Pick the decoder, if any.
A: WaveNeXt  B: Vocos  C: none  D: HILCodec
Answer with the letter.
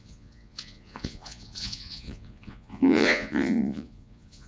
B